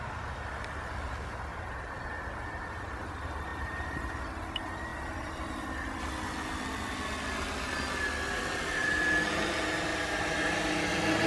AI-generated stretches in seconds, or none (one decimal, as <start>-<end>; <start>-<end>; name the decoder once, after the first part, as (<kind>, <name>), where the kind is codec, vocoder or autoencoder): 3.5-4.2 (vocoder, BigVGAN v2); 9.9-10.7